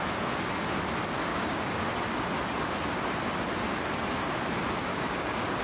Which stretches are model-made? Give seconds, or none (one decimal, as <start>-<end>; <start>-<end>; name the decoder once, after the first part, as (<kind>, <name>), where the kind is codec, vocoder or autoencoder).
1.3-1.9 (codec, DAC); 4.9-5.6

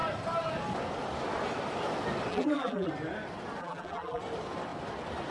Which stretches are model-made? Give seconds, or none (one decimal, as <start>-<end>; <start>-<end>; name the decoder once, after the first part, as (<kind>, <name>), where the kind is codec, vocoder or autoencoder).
2.3-2.9 (vocoder, BigVGAN v2); 3.6-4.2

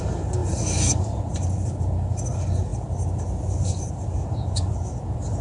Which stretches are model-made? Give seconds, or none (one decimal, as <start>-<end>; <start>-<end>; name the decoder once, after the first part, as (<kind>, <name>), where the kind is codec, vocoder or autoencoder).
none